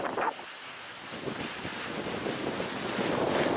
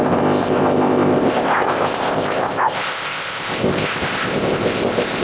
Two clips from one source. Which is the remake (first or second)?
second